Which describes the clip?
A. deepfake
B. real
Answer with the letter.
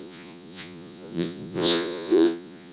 A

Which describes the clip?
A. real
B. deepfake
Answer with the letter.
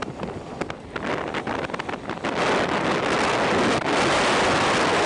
A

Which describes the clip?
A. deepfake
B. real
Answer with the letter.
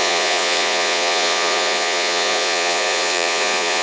A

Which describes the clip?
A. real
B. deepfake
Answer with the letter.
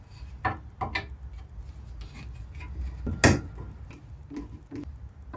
A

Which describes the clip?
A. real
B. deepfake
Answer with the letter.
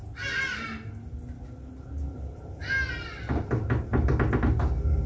A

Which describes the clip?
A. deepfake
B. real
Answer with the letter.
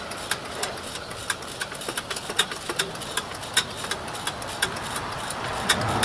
B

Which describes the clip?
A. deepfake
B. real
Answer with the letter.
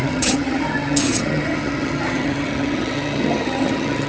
A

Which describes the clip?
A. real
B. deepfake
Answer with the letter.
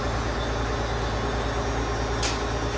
A